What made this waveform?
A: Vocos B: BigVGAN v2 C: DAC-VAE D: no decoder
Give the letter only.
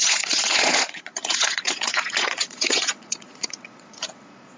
A